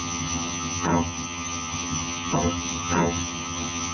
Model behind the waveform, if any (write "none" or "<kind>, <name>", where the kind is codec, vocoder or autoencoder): vocoder, HiFi-GAN